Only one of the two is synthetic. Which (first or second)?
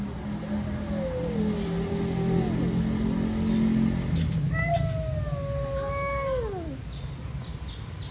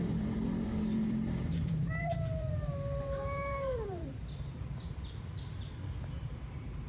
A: second